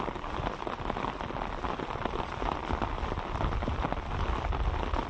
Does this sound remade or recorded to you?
recorded